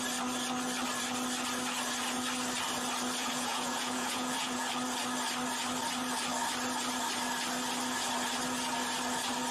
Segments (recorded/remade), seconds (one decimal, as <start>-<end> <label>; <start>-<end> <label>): 0.0-3.2 recorded; 3.2-4.7 remade; 4.7-9.5 recorded